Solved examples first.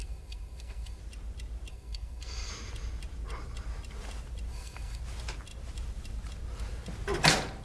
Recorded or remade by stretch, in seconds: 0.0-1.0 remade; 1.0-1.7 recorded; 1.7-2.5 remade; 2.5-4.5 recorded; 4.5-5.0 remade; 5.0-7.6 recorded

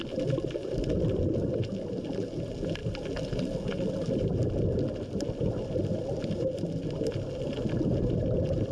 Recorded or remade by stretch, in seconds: 0.0-8.7 recorded

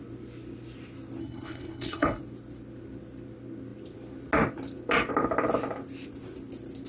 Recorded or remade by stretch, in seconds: 0.0-1.2 recorded; 1.2-2.2 remade; 2.2-6.9 recorded

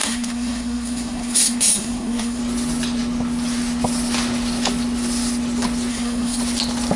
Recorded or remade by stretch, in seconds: 0.0-2.4 remade; 2.4-5.9 recorded; 5.9-6.4 remade; 6.4-7.0 recorded

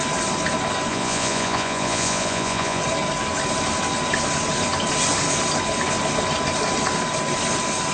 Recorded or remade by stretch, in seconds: 0.0-0.9 recorded; 0.9-2.8 remade; 2.8-7.9 recorded

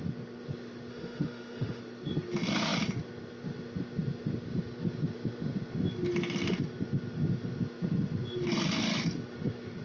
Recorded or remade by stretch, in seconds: 0.0-0.9 recorded; 0.9-1.8 remade; 1.8-9.8 recorded

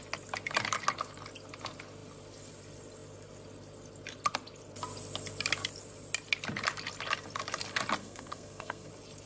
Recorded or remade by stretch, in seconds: 0.0-8.0 recorded; 8.0-8.9 remade; 8.9-9.3 recorded